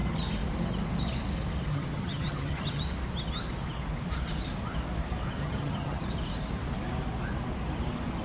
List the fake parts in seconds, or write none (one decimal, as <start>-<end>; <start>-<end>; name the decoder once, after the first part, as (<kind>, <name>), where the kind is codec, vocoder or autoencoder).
1.7-2.8 (vocoder, HiFi-GAN); 5.4-6.0